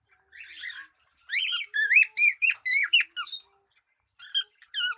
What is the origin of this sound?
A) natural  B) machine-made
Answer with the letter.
A